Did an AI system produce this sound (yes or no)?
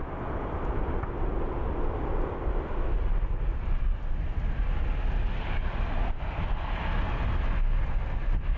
no